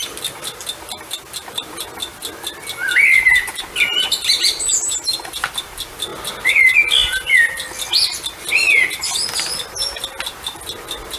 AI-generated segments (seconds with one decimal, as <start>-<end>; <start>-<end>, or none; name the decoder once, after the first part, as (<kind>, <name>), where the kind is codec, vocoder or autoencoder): none